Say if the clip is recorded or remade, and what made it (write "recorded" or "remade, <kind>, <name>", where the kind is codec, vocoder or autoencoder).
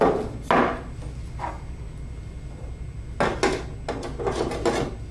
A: recorded